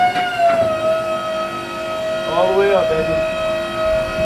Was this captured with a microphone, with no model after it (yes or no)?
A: yes